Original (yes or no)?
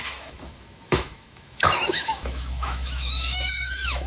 no